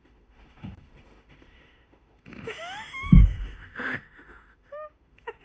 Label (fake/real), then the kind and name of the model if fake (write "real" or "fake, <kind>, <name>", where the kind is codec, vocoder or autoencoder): fake, autoencoder, DAC-VAE